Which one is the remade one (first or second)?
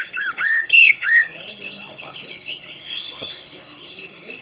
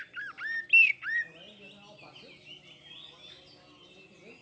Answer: first